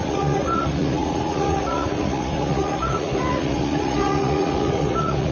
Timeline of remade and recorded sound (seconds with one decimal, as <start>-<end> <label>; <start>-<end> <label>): 0.0-5.3 remade